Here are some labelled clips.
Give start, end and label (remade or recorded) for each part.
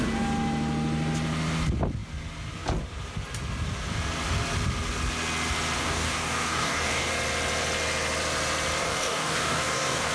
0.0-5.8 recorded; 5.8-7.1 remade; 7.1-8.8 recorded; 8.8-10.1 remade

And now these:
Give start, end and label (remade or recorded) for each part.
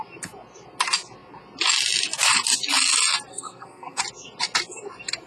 0.0-3.3 recorded; 3.3-4.0 remade; 4.0-5.3 recorded